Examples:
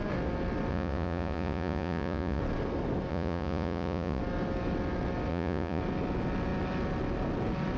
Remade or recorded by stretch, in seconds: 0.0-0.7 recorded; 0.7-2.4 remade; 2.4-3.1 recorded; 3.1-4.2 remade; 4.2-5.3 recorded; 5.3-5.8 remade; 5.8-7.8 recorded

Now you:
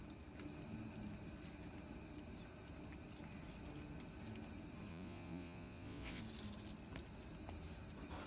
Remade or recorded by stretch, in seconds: 0.0-4.9 recorded; 4.9-6.2 remade; 6.2-8.3 recorded

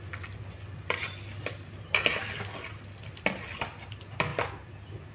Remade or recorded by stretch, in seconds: 0.0-5.1 recorded

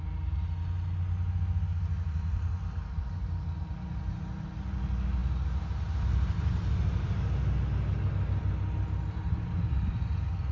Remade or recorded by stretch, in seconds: 0.0-10.5 recorded

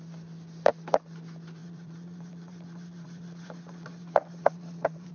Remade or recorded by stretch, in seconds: 0.0-1.6 recorded; 1.6-5.1 remade

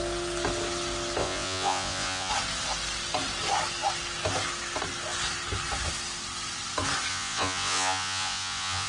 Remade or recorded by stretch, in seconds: 0.0-1.2 recorded; 1.2-2.3 remade; 2.3-7.1 recorded; 7.1-8.9 remade

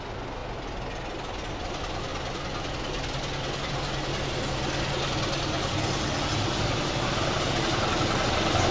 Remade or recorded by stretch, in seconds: 0.0-8.7 recorded

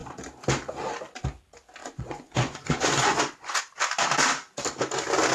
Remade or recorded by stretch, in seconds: 0.0-1.8 recorded; 1.8-3.6 remade; 3.6-5.3 recorded